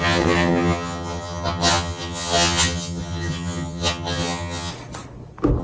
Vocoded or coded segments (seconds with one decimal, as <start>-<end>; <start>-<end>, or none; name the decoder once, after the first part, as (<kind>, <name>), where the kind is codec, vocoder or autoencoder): 0.0-4.7 (vocoder, HiFi-GAN)